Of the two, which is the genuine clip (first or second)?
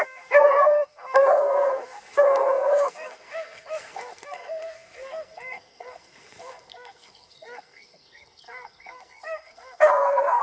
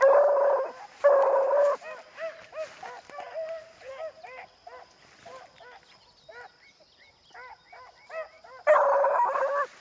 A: second